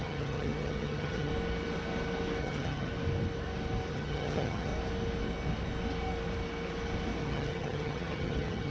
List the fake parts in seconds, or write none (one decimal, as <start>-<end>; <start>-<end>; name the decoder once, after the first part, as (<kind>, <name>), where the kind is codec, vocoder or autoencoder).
0.0-1.3 (vocoder, HiFi-GAN); 2.4-2.9; 3.9-4.7; 7.2-8.7